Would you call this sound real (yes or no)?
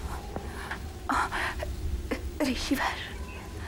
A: yes